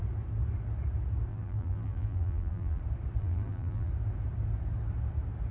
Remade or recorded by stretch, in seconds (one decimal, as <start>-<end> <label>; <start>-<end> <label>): 0.0-1.3 recorded; 1.3-2.8 remade; 2.8-3.2 recorded; 3.2-3.9 remade; 3.9-5.5 recorded